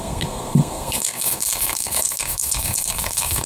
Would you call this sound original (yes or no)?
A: no